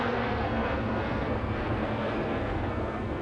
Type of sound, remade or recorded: remade